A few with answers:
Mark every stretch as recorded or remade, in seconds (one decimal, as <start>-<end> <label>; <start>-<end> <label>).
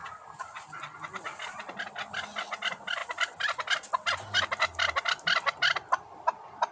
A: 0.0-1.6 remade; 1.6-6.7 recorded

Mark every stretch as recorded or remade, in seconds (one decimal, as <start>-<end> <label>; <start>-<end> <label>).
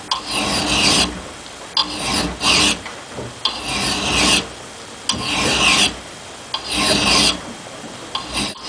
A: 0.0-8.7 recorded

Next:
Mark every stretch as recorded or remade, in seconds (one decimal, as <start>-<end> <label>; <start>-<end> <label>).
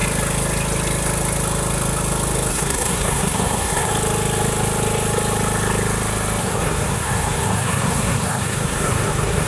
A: 0.0-2.5 recorded; 2.5-3.9 remade; 3.9-6.4 recorded; 6.4-9.5 remade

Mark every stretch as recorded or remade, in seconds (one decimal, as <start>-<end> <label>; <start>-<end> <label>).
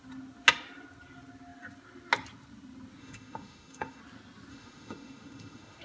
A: 0.0-3.0 recorded; 3.0-4.0 remade; 4.0-4.5 recorded; 4.5-5.8 remade